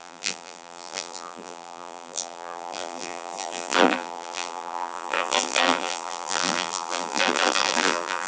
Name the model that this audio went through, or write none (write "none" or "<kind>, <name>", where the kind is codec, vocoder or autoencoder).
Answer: vocoder, BigVGAN v2